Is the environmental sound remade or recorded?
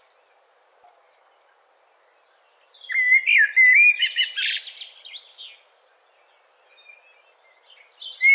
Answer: recorded